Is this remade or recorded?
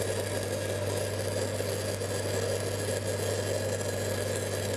recorded